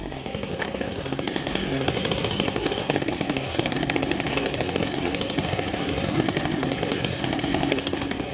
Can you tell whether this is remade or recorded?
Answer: remade